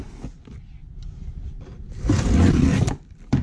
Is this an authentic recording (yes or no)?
yes